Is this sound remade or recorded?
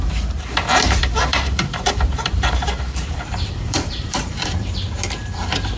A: remade